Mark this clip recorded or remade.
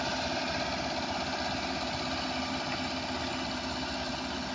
recorded